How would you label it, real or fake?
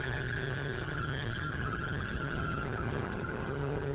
fake